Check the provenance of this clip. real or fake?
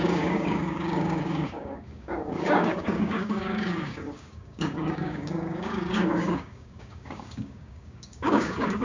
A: fake